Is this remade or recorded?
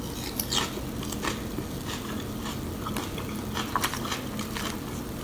recorded